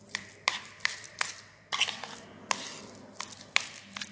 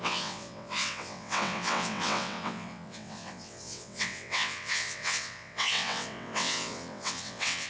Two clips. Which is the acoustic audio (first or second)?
first